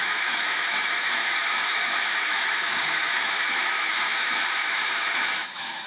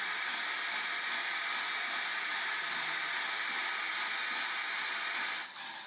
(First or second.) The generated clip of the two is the first